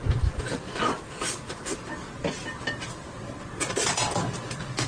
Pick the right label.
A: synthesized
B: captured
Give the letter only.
B